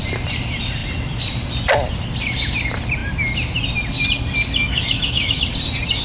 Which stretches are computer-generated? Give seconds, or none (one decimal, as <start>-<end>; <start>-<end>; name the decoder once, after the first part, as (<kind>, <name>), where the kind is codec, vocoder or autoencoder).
4.6-5.4 (autoencoder, DAC-VAE)